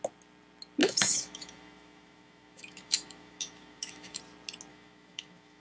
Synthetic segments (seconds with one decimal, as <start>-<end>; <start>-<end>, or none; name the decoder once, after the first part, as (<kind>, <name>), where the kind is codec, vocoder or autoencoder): 0.8-4.2 (autoencoder, DAC-VAE); 4.7-5.6